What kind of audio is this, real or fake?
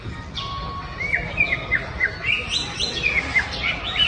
real